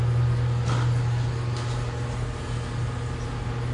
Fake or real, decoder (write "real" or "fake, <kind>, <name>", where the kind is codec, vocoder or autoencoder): real